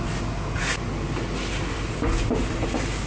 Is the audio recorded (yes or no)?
yes